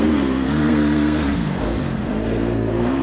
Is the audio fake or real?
fake